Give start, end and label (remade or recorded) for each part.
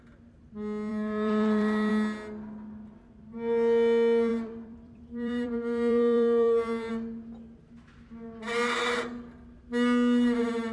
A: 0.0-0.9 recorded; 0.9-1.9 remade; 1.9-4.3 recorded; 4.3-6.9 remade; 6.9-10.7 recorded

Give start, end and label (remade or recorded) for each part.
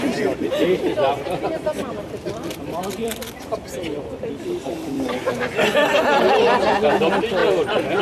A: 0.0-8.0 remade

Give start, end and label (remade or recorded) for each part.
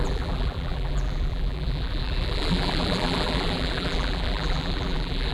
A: 0.0-5.3 remade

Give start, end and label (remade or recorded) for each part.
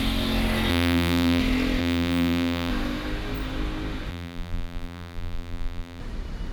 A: 0.0-0.7 recorded; 0.7-1.4 remade; 1.4-1.8 recorded; 1.8-2.7 remade; 2.7-4.1 recorded; 4.1-6.0 remade; 6.0-6.5 recorded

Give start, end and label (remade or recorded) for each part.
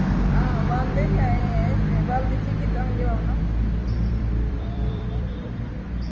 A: 0.0-1.6 remade; 1.6-3.4 recorded; 3.4-6.1 remade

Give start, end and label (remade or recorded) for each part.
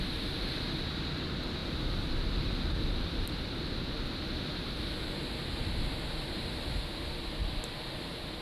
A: 0.0-8.4 recorded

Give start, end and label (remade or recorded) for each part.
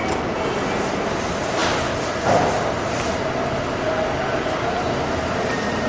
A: 0.0-5.9 recorded